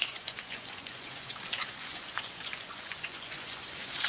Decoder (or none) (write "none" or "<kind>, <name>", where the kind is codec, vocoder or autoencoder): vocoder, Vocos